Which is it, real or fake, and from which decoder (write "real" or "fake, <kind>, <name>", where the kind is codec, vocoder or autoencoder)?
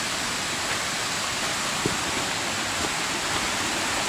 fake, vocoder, BigVGAN v2